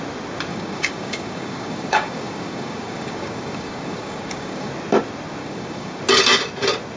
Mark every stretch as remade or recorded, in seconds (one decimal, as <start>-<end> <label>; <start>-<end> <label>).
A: 0.0-0.5 recorded; 0.5-4.7 remade; 4.7-5.4 recorded; 5.4-6.0 remade; 6.0-7.0 recorded